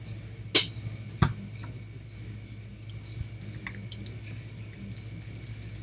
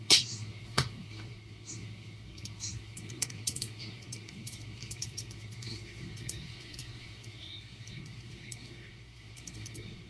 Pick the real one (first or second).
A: first